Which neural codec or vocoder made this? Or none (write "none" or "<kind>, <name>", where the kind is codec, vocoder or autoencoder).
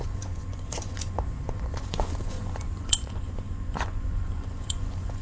vocoder, Vocos